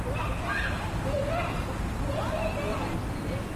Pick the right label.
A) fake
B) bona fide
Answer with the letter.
B